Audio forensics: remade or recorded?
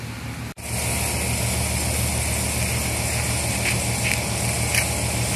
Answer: recorded